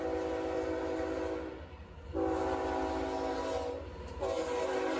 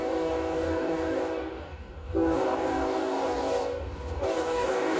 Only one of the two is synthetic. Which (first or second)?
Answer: second